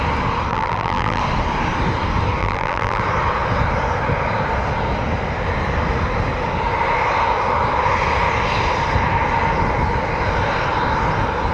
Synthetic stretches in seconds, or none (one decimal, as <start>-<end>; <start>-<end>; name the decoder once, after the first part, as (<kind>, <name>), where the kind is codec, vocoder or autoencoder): 0.5-1.2 (vocoder, BigVGAN v2); 2.4-3.0